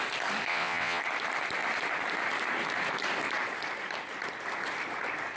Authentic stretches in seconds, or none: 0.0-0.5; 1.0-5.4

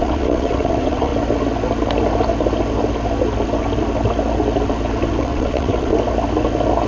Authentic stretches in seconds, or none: 1.1-5.2; 5.9-6.9

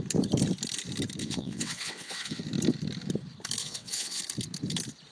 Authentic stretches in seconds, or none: 0.0-1.2; 2.4-3.6; 4.2-5.1